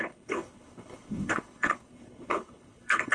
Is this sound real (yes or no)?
no